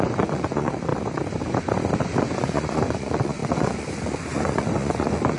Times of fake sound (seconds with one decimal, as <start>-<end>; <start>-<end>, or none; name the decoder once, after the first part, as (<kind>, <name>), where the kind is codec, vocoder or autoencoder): 0.0-0.9 (vocoder, Vocos); 2.2-5.4